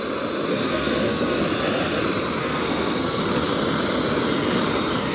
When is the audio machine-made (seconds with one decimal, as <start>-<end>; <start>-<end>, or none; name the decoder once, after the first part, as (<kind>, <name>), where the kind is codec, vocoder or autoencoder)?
0.5-1.4 (codec, SNAC); 2.4-3.2

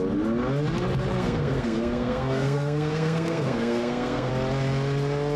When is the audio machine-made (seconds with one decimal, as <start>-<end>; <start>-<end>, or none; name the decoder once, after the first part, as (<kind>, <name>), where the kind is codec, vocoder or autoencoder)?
1.1-4.3 (codec, SNAC)

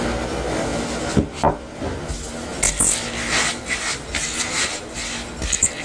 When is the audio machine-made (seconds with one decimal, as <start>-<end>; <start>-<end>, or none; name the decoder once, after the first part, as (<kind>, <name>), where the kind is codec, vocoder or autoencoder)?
none

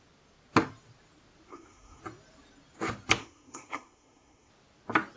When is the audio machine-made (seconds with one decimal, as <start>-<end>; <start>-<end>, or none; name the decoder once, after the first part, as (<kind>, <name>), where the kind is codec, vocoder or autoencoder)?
1.5-2.0 (codec, SNAC); 3.2-4.5

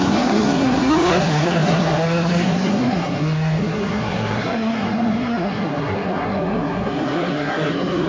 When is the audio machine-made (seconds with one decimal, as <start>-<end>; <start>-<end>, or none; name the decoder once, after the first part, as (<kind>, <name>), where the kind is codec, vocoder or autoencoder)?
0.0-8.1 (codec, SNAC)

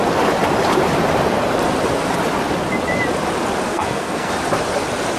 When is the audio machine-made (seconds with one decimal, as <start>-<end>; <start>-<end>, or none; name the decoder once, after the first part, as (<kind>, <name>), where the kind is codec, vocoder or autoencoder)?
3.7-4.3 (codec, SNAC)

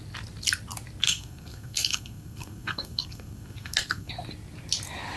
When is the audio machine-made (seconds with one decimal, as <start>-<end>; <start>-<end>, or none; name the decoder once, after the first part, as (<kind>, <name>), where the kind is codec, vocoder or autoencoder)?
1.0-4.1 (codec, SNAC)

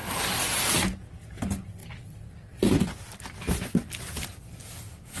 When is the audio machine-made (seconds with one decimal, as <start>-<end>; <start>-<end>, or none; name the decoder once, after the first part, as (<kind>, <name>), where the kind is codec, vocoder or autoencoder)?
none